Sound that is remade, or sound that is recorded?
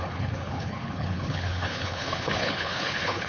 remade